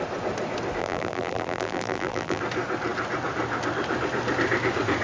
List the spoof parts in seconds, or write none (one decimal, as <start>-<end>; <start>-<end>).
0.8-2.4